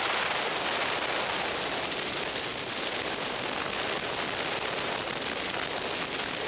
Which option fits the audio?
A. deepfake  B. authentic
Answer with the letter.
B